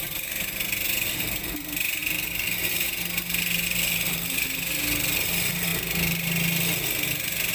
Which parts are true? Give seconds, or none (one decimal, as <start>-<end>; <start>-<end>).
0.0-7.5